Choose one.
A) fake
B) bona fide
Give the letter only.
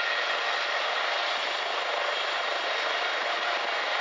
B